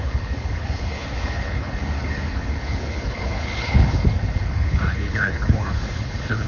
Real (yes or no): no